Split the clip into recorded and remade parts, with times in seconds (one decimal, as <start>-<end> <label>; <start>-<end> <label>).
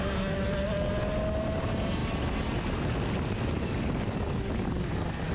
0.0-5.3 recorded